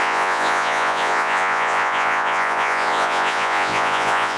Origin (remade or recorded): remade